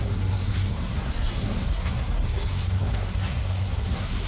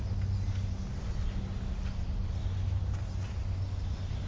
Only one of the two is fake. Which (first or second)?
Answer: first